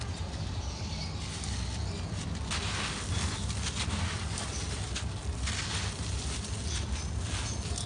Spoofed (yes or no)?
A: no